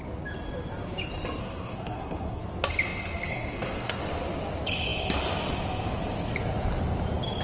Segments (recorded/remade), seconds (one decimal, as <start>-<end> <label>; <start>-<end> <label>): 0.0-1.4 recorded; 1.4-2.4 remade; 2.4-3.3 recorded; 3.3-4.0 remade; 4.0-7.4 recorded

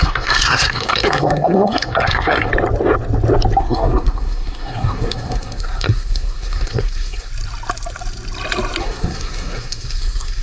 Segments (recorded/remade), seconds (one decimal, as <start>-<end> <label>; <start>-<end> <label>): 0.0-2.5 remade; 2.5-3.6 recorded; 3.6-7.3 remade; 7.3-8.8 recorded; 8.8-10.4 remade

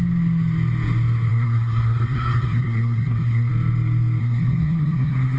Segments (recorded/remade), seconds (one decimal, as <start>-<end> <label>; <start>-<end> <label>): 0.0-1.3 recorded; 1.3-3.5 remade; 3.5-4.2 recorded; 4.2-5.4 remade

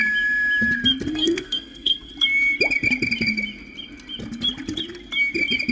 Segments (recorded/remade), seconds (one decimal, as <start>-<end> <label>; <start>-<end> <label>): 0.0-1.1 recorded; 1.1-2.1 remade; 2.1-5.7 recorded

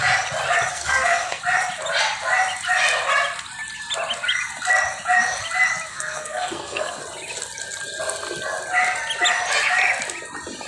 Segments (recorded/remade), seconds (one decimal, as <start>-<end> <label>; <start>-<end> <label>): 0.0-0.7 recorded; 0.7-1.4 remade; 1.4-5.9 recorded; 5.9-7.0 remade; 7.0-10.7 recorded

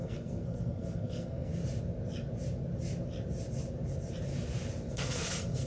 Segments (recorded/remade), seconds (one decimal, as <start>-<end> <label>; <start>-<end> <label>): 0.0-1.5 remade; 1.5-4.9 recorded; 4.9-5.7 remade